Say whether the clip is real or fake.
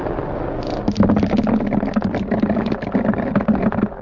real